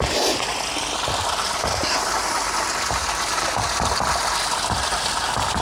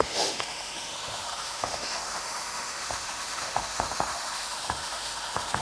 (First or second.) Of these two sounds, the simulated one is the second